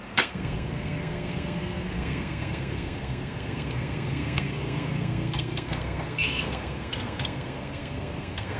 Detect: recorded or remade remade